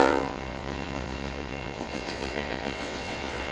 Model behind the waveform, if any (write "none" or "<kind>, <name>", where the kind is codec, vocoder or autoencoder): vocoder, WaveNeXt